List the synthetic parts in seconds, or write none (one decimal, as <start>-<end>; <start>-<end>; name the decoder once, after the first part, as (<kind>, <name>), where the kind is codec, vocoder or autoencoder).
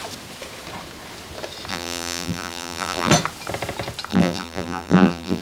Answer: 1.7-3.1 (vocoder, BigVGAN v2); 4.1-5.4